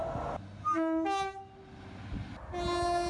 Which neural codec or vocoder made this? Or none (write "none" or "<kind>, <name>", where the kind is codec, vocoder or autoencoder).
none